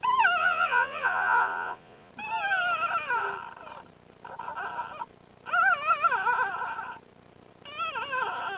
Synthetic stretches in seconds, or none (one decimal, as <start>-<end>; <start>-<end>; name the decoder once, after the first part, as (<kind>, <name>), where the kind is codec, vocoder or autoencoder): 0.4-2.1 (vocoder, Vocos)